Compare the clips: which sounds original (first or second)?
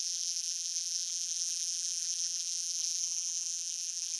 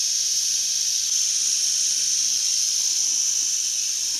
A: second